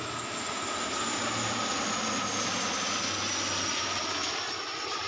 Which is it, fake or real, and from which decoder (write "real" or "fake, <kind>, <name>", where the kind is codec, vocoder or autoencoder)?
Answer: real